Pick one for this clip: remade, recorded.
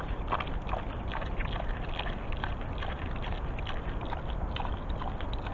recorded